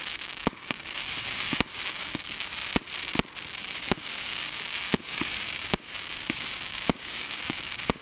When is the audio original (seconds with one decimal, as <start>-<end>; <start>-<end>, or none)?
2.5-3.6